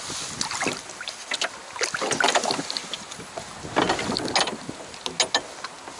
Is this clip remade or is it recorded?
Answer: recorded